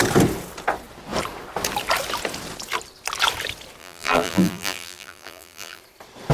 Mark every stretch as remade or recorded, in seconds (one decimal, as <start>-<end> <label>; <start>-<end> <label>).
0.0-3.8 recorded; 3.8-5.8 remade; 5.8-6.3 recorded